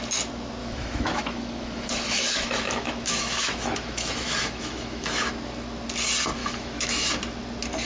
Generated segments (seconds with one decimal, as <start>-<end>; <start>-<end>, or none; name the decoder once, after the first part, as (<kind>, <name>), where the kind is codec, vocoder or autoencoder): 0.6-5.3 (autoencoder, DAC-VAE); 6.4-7.1